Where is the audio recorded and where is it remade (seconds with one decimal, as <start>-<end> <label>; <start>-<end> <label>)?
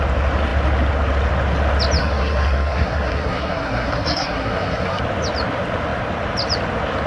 0.0-2.0 recorded; 2.0-5.0 remade; 5.0-7.1 recorded